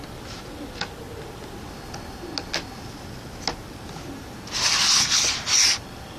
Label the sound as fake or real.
real